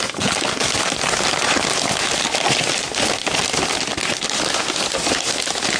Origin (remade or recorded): recorded